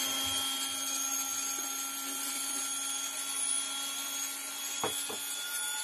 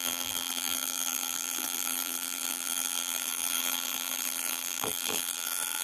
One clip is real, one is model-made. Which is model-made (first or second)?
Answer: second